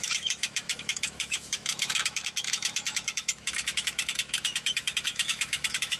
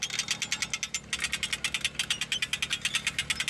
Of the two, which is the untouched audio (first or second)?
second